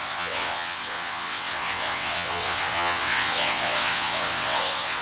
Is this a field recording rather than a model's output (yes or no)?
no